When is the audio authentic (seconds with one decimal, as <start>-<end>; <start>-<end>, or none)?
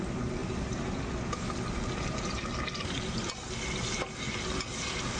0.0-5.2